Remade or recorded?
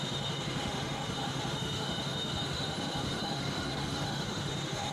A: remade